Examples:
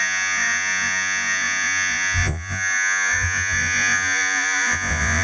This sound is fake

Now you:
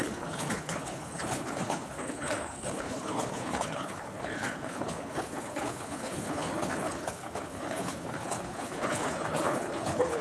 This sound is fake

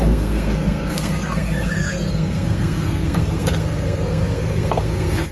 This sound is fake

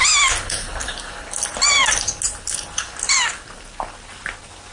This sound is real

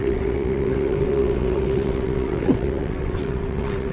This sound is fake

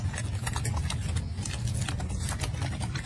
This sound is real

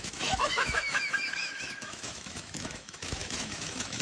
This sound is fake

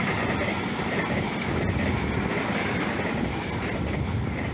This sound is real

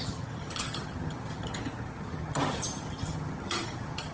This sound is fake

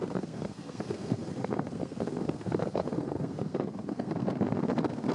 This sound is fake